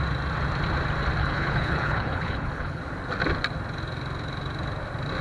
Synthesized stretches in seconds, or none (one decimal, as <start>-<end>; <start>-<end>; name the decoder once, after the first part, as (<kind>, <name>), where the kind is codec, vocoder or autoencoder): 1.2-2.8 (codec, HILCodec)